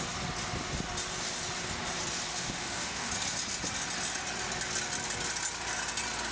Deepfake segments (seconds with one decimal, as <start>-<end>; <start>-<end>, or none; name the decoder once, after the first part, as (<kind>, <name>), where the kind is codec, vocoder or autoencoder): 2.3-3.1 (autoencoder, DAC-VAE)